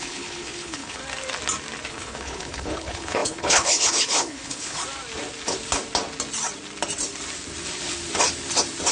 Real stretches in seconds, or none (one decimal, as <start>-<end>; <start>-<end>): 1.0-1.9; 4.8-8.9